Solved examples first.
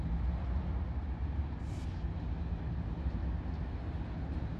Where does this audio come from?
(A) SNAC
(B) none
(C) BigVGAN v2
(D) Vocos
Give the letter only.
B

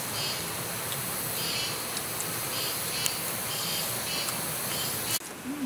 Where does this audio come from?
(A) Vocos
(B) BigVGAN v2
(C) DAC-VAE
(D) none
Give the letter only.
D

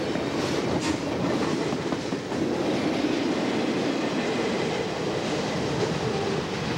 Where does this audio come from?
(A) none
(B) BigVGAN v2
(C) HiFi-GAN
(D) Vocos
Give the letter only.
A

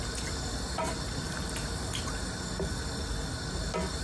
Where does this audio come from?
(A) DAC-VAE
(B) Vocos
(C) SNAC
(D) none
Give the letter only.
D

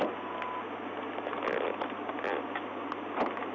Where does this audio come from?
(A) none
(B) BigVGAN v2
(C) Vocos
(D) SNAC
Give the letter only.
A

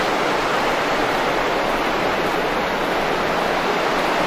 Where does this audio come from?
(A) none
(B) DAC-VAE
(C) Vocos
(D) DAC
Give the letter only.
A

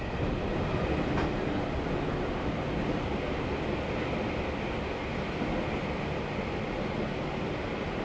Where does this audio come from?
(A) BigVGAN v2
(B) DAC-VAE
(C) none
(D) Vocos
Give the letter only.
C